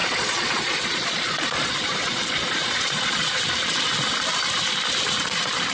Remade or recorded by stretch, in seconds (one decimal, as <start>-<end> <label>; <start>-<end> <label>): 0.0-3.4 remade; 3.4-5.7 recorded

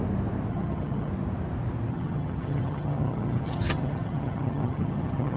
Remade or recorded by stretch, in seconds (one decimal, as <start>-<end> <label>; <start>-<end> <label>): 0.0-0.5 recorded; 0.5-1.1 remade; 1.1-1.9 recorded; 1.9-5.4 remade

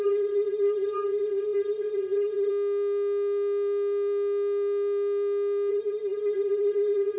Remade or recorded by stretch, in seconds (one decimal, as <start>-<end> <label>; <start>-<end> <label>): 0.0-2.5 remade; 2.5-5.7 recorded; 5.7-7.2 remade

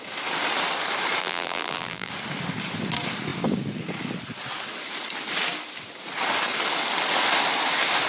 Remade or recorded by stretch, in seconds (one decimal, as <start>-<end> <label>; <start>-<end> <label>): 0.0-1.2 recorded; 1.2-2.1 remade; 2.1-8.1 recorded

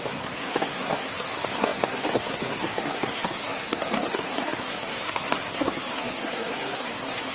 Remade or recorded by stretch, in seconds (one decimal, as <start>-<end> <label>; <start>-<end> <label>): 0.0-7.3 remade

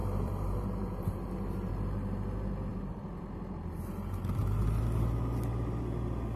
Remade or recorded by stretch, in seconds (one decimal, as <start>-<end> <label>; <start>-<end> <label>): 0.0-1.7 remade; 1.7-6.4 recorded